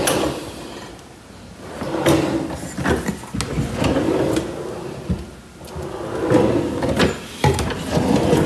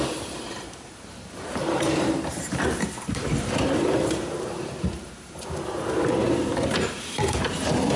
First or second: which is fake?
second